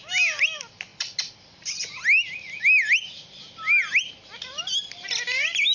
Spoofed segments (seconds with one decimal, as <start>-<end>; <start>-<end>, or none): none